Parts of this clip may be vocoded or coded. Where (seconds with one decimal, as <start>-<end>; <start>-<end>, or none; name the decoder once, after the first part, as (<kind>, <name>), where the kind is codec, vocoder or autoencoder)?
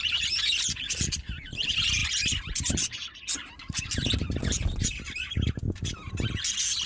none